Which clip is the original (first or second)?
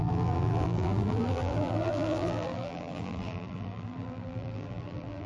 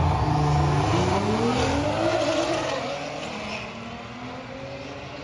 second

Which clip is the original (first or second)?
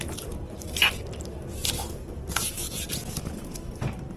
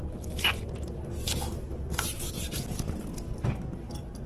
second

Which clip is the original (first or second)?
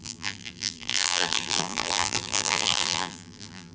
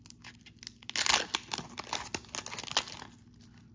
second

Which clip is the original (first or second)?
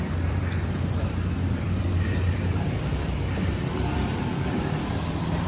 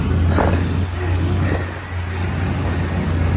second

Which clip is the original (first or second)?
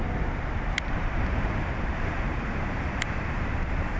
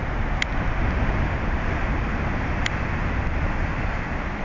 second